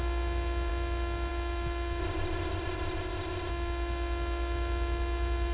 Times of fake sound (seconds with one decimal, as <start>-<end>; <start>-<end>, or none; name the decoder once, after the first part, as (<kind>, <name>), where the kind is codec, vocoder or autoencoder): 2.0-3.5 (codec, ZipCodec)